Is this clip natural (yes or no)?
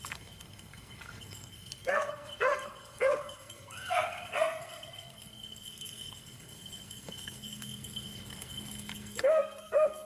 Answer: no